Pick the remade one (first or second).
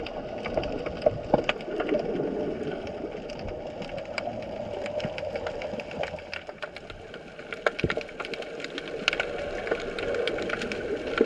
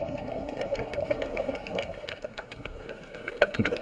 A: second